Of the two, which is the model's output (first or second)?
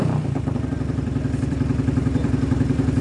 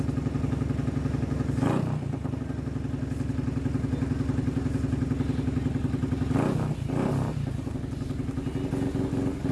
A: first